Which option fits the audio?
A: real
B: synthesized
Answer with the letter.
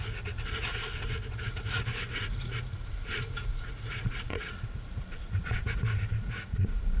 B